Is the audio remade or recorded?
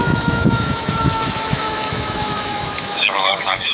remade